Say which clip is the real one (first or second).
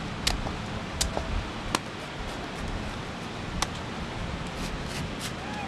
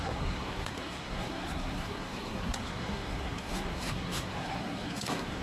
first